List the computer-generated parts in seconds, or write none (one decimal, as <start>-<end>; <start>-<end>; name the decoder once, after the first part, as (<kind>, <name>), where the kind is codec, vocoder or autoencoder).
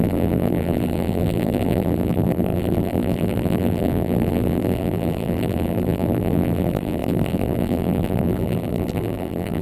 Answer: 0.0-9.6 (vocoder, BigVGAN v2)